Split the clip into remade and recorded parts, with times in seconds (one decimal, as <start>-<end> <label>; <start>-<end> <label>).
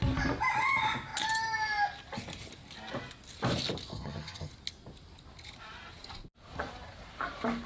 0.0-3.9 recorded; 3.9-4.5 remade; 4.5-7.7 recorded